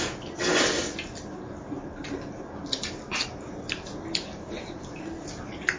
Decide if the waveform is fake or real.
real